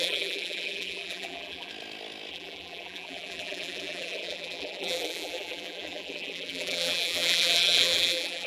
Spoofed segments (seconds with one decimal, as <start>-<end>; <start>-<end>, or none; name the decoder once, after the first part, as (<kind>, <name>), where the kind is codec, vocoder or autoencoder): 0.0-1.7 (vocoder, BigVGAN v2); 2.3-8.5

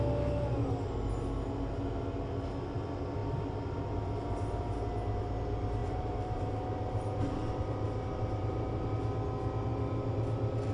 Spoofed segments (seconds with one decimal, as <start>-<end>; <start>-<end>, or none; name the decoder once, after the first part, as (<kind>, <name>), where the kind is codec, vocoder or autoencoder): 5.8-8.9 (vocoder, BigVGAN v2)

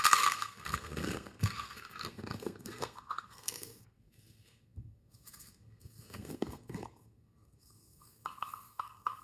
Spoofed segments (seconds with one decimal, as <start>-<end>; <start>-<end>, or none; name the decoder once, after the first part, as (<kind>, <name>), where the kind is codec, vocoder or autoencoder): 0.0-9.2 (codec, SNAC)

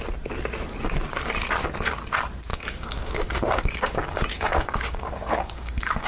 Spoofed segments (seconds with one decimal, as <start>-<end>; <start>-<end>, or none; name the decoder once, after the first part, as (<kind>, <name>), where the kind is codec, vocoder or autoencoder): 2.5-6.1 (codec, DAC)